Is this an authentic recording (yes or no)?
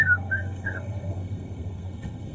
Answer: no